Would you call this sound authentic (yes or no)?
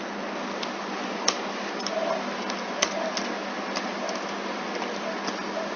yes